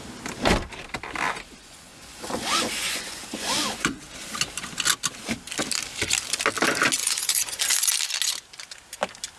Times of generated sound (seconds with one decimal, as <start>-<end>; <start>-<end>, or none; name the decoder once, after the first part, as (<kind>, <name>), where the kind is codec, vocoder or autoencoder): 1.6-4.0 (vocoder, Vocos); 7.0-7.6